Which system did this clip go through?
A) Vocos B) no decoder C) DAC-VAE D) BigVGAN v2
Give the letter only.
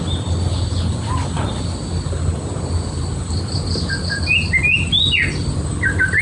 B